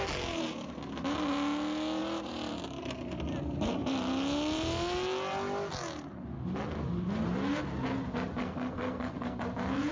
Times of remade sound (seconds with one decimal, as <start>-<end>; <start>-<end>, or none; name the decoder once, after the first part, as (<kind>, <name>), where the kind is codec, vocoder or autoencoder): 8.4-9.4 (codec, SNAC)